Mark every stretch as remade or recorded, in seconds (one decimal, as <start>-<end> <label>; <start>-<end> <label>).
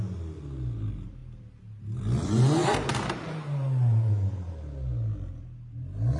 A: 0.0-2.6 recorded; 2.6-4.6 remade; 4.6-6.2 recorded